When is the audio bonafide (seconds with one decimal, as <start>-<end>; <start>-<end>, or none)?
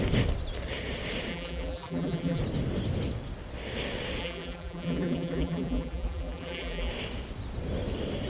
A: 0.0-1.3; 2.4-4.2; 6.9-8.3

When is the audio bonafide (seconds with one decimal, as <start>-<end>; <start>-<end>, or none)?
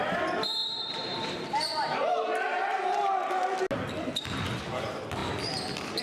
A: 0.0-0.6; 3.3-6.0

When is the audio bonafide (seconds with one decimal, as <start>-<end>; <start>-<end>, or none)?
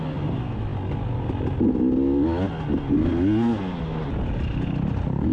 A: 0.0-5.3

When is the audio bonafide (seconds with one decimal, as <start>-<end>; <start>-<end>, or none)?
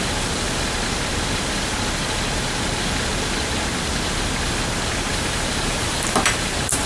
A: 0.0-5.1